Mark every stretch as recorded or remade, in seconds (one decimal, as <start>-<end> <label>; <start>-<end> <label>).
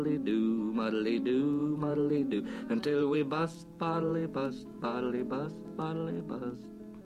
0.0-1.6 recorded; 1.6-5.8 remade; 5.8-7.0 recorded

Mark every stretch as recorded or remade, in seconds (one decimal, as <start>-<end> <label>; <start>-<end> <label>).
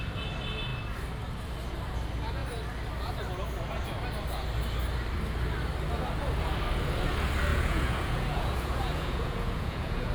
0.0-7.5 recorded; 7.5-10.1 remade